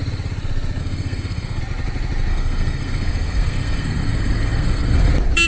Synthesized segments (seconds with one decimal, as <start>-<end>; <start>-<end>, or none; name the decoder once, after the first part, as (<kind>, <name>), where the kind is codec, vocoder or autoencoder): 0.8-1.6 (codec, SNAC); 2.3-5.1